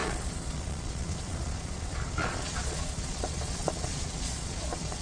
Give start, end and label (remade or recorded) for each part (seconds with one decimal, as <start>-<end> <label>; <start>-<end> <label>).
0.0-5.0 remade